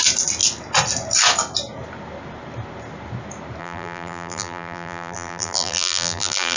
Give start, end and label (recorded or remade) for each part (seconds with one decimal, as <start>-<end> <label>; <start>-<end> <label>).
0.0-3.6 recorded; 3.6-6.6 remade